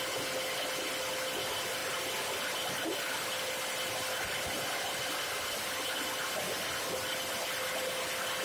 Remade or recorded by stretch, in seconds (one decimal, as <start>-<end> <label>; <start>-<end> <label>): 0.0-8.4 recorded